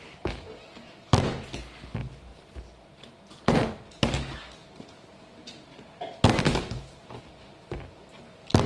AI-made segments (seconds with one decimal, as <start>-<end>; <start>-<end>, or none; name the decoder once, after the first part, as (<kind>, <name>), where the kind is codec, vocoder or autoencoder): none